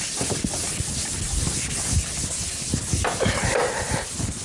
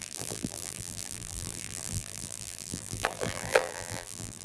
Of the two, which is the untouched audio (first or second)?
first